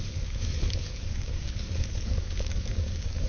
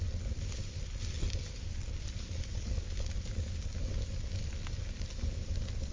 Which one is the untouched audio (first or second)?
second